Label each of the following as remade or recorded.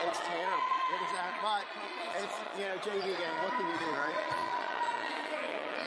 remade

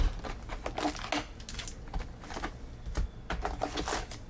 recorded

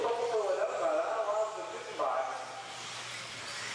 recorded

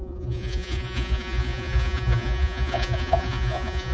remade